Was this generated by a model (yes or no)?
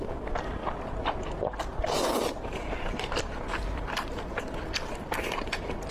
yes